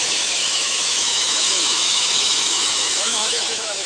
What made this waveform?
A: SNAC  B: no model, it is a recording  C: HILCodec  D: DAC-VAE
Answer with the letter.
D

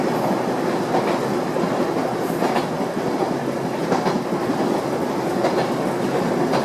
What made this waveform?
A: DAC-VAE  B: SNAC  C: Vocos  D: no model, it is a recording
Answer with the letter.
D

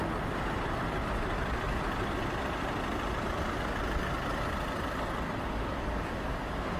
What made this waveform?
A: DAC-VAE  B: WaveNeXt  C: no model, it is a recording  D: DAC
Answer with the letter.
C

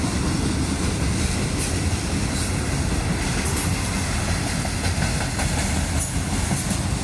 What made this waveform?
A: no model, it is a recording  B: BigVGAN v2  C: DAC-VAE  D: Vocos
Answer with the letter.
A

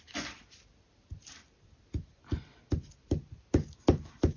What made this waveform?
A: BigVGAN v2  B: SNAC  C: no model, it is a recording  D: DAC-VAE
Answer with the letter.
C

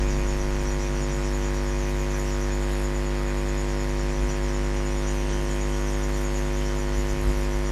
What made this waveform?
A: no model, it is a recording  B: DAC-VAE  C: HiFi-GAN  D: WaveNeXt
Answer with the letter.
A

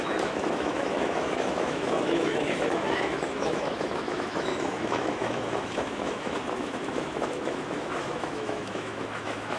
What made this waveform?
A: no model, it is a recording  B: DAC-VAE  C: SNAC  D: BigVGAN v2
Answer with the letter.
B